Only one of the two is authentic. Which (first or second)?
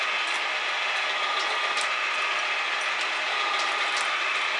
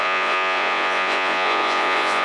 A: first